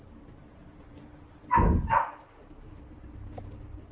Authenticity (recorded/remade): recorded